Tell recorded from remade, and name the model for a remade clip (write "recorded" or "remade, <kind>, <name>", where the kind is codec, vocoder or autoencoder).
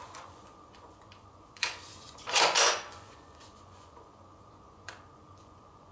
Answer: remade, vocoder, Vocos